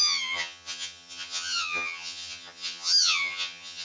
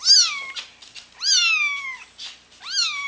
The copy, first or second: first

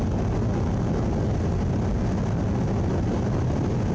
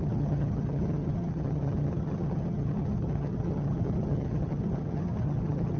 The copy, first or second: second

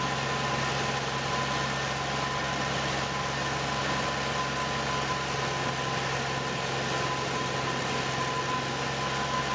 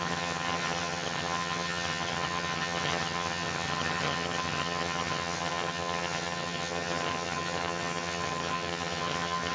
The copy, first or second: second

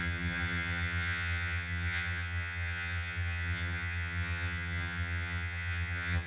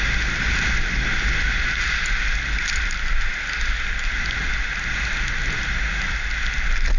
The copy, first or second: first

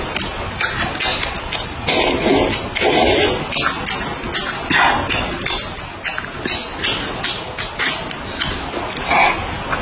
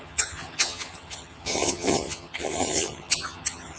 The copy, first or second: second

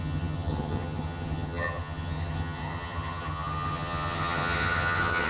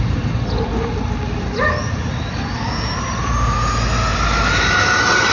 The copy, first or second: first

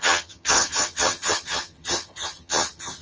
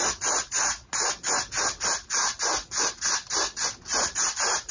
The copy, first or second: first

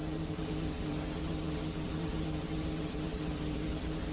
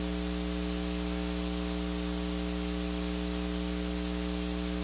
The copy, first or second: first